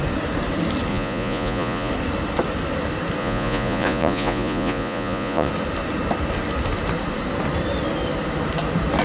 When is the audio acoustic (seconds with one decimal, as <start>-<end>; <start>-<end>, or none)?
0.0-0.9; 1.9-3.2; 5.5-9.0